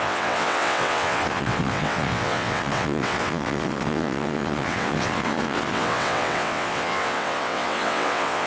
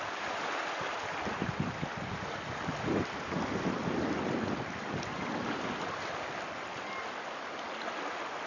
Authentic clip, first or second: second